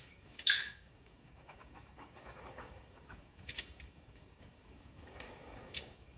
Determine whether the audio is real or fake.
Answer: fake